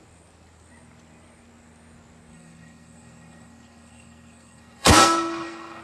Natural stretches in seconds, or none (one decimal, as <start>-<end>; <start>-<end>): 0.0-2.3